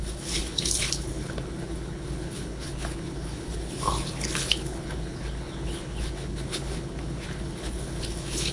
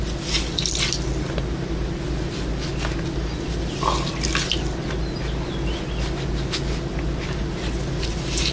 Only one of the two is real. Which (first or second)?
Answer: second